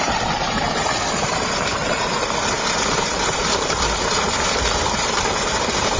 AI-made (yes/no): yes